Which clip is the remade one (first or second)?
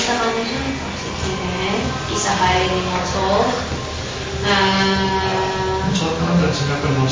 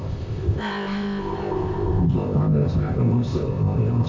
second